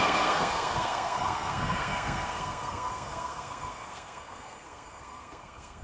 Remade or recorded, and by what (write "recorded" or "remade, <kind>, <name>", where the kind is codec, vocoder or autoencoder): remade, codec, SNAC